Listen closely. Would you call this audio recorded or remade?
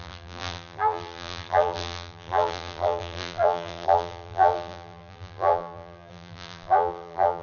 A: remade